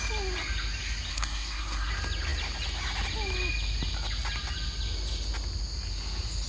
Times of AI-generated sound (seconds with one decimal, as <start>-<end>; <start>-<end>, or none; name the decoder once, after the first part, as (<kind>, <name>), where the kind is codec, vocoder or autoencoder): 1.1-1.9 (codec, SNAC)